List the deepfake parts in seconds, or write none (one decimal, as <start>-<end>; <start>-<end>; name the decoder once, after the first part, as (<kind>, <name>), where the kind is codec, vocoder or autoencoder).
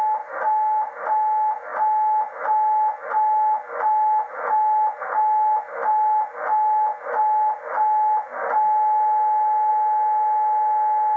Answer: none